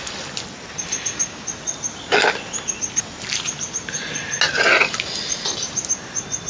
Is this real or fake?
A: real